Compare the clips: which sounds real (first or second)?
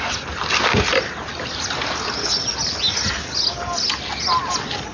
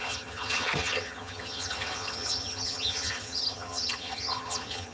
first